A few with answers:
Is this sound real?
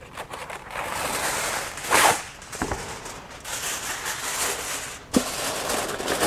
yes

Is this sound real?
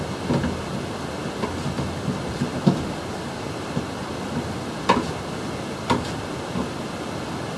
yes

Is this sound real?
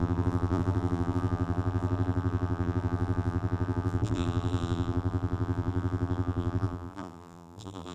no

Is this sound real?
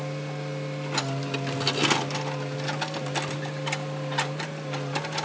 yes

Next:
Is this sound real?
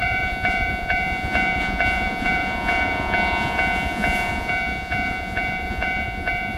no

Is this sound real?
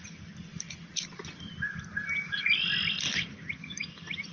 yes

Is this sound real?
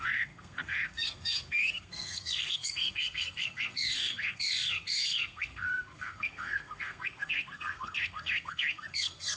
no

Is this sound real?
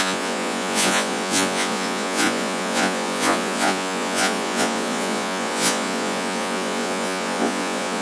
no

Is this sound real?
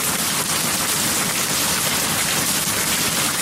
yes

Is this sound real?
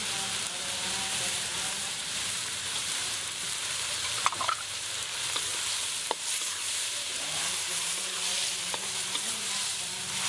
no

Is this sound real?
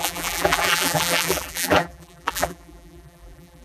no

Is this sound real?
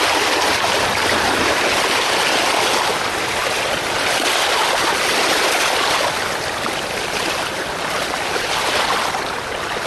yes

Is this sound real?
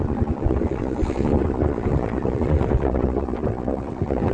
no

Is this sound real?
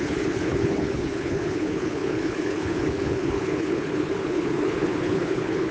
no